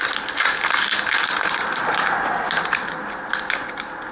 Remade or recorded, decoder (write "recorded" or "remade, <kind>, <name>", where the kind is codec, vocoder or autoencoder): recorded